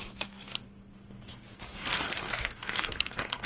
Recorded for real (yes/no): no